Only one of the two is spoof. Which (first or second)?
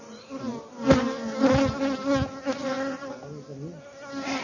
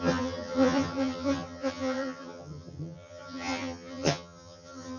second